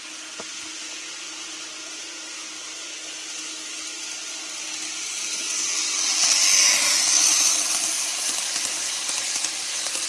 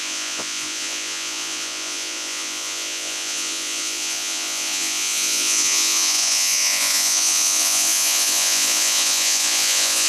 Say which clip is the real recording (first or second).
first